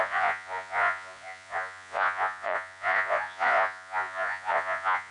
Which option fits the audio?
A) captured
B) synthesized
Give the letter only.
B